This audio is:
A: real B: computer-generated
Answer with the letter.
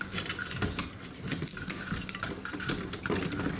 A